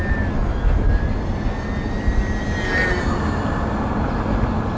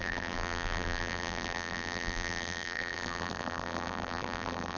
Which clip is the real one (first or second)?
first